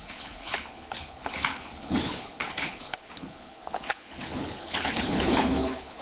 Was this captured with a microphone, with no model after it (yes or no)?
no